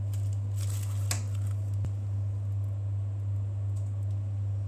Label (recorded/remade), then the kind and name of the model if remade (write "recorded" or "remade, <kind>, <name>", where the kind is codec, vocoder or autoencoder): recorded